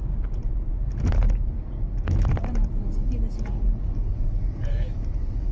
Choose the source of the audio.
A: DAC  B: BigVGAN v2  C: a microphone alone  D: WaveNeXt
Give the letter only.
C